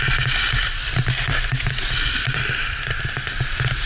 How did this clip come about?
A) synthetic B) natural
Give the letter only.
B